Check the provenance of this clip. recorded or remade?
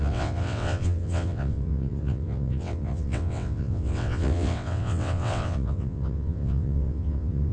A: remade